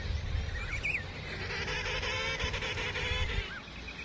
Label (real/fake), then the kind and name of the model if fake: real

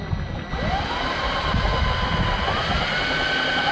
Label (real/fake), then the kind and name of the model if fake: real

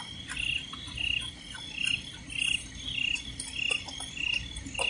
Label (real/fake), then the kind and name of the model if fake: real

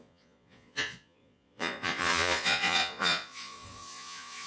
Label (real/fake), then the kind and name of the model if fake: fake, vocoder, Vocos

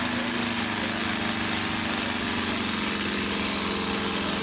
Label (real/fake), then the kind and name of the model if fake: real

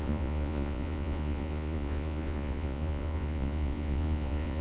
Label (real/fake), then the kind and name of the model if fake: fake, vocoder, Vocos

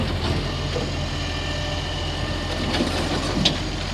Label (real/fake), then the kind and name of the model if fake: real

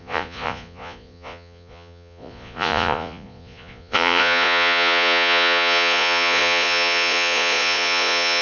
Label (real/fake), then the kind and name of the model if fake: fake, vocoder, Vocos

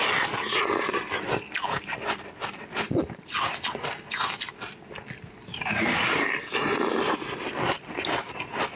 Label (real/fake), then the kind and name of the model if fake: real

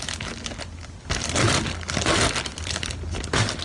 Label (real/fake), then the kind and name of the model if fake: real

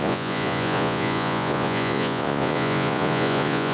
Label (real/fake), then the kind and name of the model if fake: fake, vocoder, Vocos